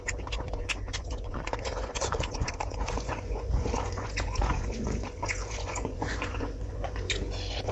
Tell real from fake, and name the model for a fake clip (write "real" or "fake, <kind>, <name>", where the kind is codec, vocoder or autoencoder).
fake, vocoder, Vocos